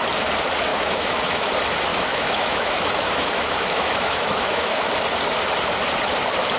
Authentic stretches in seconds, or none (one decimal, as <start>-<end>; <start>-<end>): 0.0-0.7; 1.5-1.9; 4.9-6.6